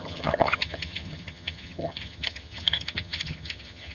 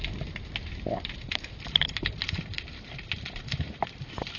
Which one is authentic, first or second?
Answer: second